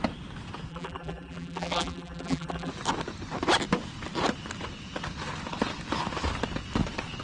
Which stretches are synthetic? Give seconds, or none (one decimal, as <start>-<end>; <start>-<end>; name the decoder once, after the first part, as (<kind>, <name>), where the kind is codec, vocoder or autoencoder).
0.7-2.7 (vocoder, BigVGAN v2)

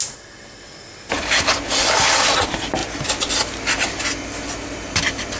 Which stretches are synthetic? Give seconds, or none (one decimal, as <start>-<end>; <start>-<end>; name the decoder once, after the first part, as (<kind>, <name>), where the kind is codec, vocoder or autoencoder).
none

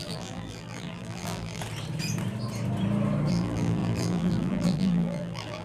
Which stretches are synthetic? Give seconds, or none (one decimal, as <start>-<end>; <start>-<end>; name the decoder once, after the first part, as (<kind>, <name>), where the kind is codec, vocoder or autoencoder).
0.0-1.6 (vocoder, BigVGAN v2); 3.3-5.6

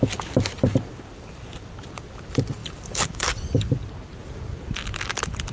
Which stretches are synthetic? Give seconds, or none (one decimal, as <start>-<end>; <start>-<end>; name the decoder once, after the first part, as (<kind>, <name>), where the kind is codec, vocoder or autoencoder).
2.6-3.2 (vocoder, BigVGAN v2)